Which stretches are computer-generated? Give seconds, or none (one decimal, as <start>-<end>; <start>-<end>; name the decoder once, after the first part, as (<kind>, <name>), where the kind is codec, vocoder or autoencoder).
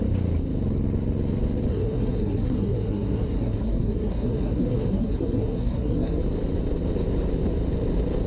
1.7-6.2 (codec, SNAC)